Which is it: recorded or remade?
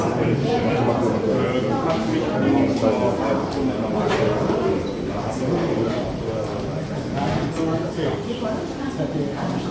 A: recorded